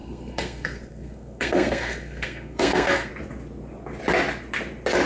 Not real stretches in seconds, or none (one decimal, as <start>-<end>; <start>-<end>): 0.0-3.1